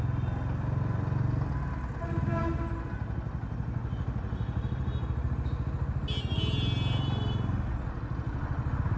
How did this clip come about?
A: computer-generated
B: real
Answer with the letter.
B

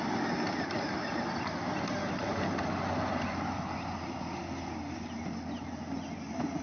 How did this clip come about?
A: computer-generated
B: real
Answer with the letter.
B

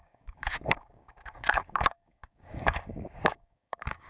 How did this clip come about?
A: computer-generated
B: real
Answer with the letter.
A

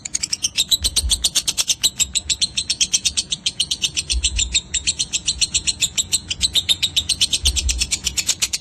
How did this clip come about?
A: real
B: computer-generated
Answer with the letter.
B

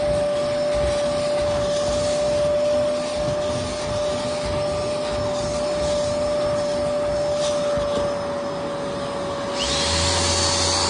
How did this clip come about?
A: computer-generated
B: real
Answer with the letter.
B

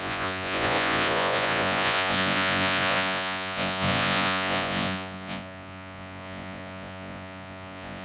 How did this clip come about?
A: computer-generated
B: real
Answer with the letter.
A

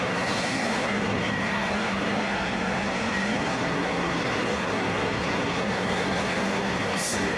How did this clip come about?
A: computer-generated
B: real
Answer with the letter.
A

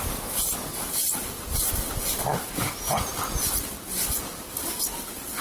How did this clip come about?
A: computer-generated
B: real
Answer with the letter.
B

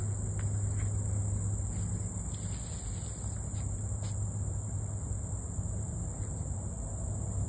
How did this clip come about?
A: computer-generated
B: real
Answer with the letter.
B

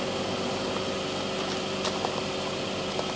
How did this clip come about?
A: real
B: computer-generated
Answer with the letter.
A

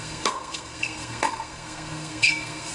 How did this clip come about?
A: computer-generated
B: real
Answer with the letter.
A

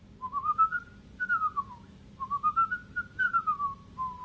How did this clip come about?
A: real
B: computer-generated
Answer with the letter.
B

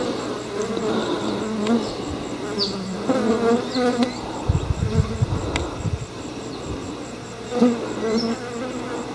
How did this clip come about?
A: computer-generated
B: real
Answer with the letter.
B